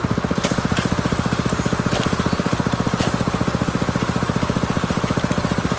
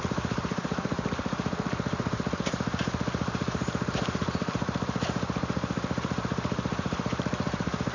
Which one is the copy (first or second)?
second